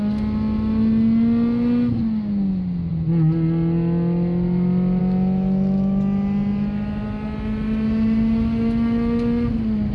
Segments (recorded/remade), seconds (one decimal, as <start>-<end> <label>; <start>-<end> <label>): 0.0-9.9 recorded